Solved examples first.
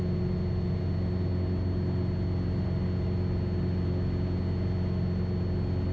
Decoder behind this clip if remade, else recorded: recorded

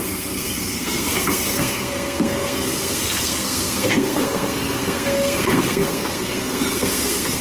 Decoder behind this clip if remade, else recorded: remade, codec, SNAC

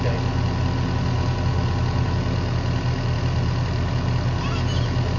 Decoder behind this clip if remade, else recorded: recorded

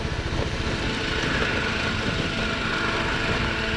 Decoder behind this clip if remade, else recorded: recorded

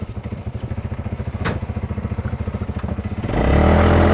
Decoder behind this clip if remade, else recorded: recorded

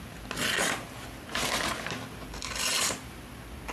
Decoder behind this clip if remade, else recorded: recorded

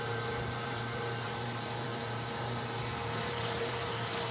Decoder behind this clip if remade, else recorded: remade, vocoder, BigVGAN v2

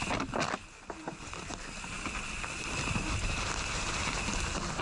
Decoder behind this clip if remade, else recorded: recorded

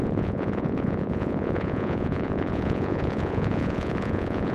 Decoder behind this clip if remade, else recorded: remade, vocoder, Vocos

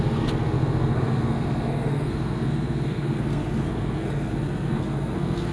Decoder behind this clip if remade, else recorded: remade, codec, SNAC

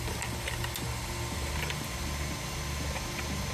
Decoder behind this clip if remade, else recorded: recorded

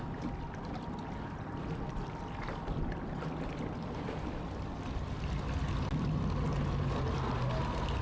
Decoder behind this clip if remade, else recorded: recorded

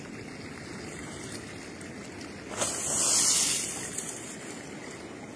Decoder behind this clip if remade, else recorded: recorded